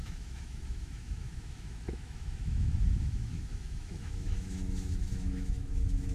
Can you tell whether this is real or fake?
fake